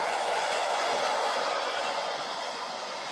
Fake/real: fake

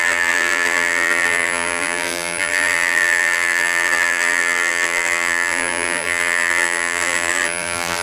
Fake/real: fake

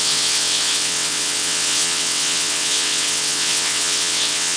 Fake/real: fake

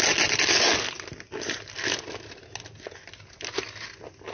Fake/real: real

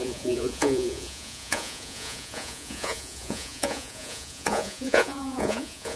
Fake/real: fake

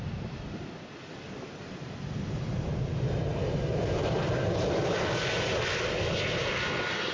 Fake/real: real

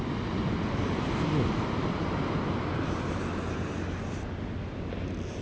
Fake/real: real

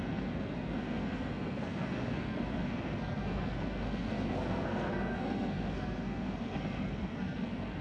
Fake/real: fake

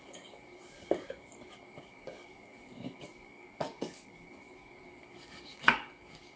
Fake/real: fake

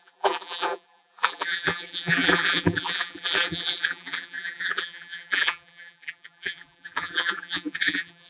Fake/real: fake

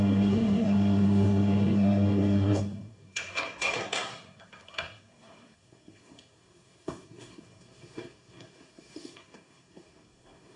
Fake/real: fake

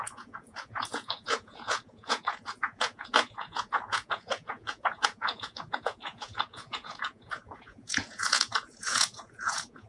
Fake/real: fake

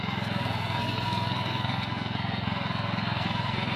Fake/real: fake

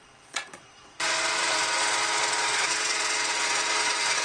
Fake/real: fake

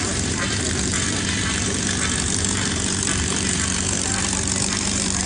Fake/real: fake